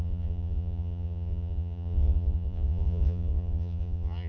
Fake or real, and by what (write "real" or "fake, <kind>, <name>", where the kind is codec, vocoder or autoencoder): fake, vocoder, Vocos